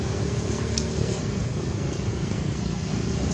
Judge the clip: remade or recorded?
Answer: remade